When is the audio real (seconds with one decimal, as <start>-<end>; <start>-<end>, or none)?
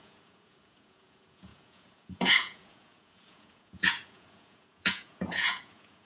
none